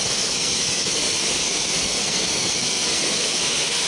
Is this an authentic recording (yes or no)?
no